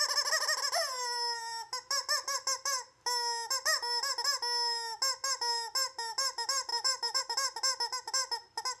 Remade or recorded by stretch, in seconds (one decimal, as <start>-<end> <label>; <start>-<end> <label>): 0.0-6.7 recorded; 6.7-7.2 remade; 7.2-8.8 recorded